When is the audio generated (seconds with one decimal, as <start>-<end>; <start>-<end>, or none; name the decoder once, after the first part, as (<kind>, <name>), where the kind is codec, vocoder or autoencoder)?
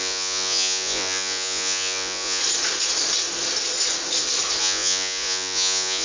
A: 0.0-2.4 (vocoder, Vocos); 4.6-6.0